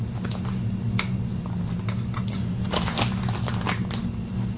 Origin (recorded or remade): recorded